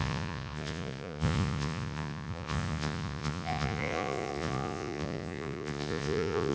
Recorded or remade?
remade